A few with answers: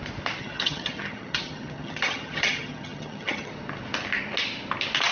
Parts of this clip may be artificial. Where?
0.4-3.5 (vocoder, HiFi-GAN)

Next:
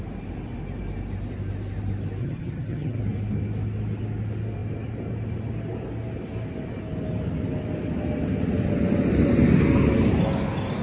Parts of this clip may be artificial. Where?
2.2-3.0 (vocoder, HiFi-GAN)

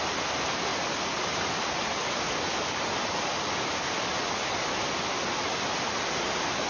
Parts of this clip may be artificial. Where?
none

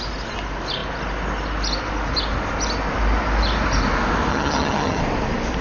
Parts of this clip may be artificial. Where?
4.3-5.0 (vocoder, HiFi-GAN)

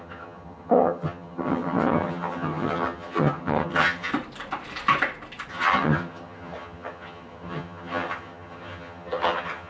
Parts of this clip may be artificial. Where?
0.0-4.1 (vocoder, HiFi-GAN); 5.5-9.7

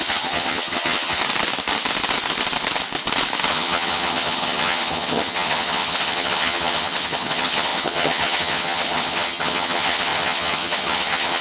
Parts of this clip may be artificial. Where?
0.0-1.2 (vocoder, HiFi-GAN); 3.5-11.4

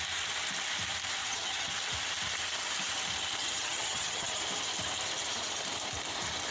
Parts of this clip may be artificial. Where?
1.2-1.7 (vocoder, HiFi-GAN); 3.4-4.4

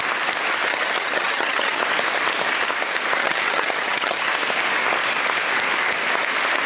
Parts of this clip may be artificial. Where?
0.6-1.8 (vocoder, HiFi-GAN); 3.2-4.3